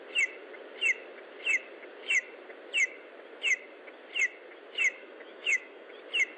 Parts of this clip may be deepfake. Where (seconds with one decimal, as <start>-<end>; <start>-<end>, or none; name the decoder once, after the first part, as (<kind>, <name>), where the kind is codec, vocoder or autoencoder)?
5.0-5.9 (autoencoder, DAC-VAE)